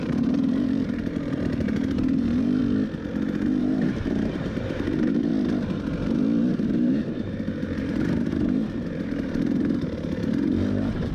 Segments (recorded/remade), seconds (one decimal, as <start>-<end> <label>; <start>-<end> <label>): 0.0-2.6 remade; 2.6-3.6 recorded; 3.6-5.3 remade; 5.3-6.5 recorded; 6.5-11.1 remade